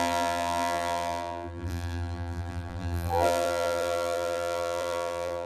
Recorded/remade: remade